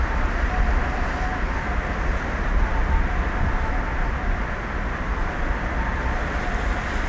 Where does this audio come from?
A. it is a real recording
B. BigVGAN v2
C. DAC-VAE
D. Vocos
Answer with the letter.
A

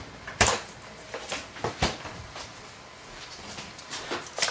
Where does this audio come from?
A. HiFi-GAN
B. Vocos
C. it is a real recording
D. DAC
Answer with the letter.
C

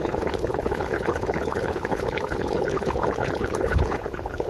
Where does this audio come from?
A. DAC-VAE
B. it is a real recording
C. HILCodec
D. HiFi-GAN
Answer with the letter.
C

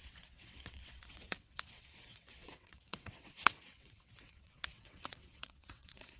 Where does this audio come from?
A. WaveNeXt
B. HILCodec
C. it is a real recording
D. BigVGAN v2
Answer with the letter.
A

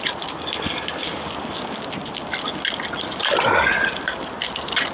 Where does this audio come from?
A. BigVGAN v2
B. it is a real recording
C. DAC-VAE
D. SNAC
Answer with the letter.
B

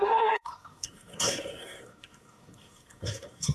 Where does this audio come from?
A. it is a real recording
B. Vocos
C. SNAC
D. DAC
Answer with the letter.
C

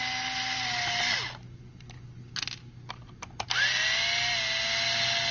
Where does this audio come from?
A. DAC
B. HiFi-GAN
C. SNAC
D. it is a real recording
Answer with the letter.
D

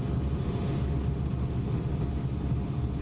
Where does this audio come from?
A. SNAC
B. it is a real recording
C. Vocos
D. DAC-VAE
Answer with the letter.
B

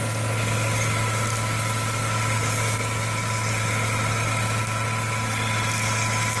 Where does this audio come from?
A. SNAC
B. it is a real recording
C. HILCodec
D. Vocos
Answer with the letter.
B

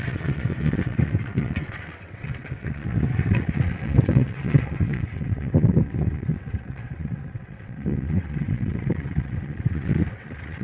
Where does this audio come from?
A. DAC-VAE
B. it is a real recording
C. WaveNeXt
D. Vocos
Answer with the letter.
C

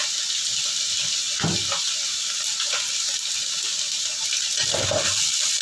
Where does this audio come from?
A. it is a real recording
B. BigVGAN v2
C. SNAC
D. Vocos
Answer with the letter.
A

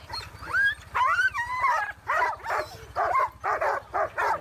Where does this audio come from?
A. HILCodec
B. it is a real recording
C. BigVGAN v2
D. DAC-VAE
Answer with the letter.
B